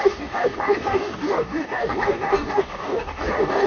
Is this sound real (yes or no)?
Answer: no